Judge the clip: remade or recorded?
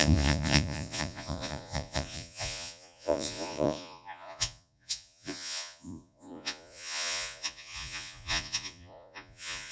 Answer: remade